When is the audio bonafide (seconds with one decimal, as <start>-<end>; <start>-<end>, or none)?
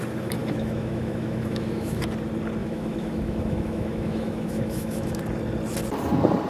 0.0-0.4; 2.0-2.6; 5.2-6.5